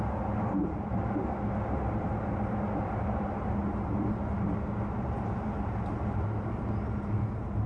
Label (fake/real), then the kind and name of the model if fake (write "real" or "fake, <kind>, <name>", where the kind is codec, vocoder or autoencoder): real